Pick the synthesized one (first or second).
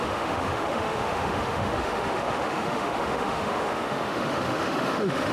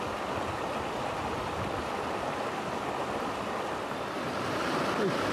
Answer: first